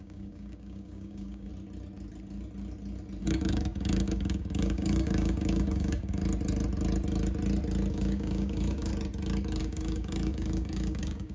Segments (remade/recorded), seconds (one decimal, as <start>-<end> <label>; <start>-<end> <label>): 0.0-1.5 remade; 1.5-3.2 recorded; 3.2-6.2 remade; 6.2-7.9 recorded; 7.9-8.9 remade; 8.9-9.6 recorded; 9.6-11.3 remade